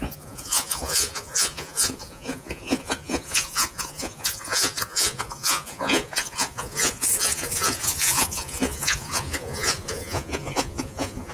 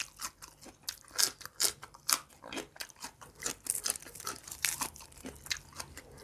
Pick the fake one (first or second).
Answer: first